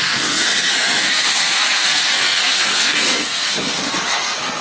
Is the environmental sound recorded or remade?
remade